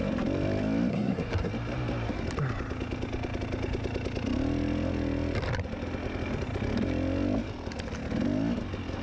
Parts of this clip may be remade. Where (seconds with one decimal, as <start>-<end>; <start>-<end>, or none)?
0.9-1.5